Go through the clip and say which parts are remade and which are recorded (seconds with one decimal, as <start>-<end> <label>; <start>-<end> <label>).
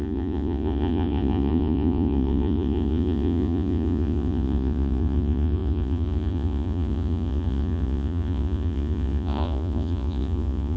0.0-10.8 remade